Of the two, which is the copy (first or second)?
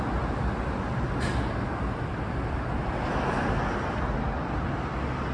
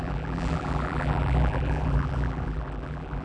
second